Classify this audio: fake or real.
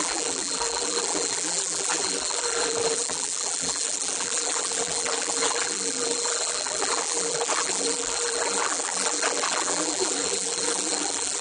fake